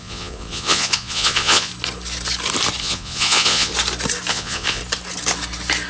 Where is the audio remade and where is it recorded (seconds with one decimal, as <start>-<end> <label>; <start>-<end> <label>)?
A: 0.0-1.7 remade; 1.7-2.8 recorded; 2.8-3.7 remade; 3.7-4.3 recorded; 4.3-4.8 remade; 4.8-5.9 recorded